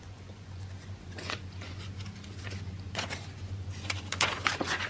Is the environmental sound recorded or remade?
remade